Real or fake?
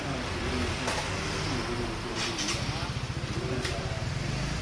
real